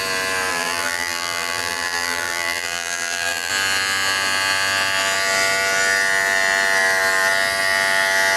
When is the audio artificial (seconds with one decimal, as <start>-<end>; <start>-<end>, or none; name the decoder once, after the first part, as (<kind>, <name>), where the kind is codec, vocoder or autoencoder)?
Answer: 0.5-3.5 (vocoder, BigVGAN v2)